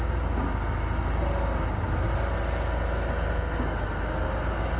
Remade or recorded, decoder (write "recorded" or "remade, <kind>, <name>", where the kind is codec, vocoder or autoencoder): recorded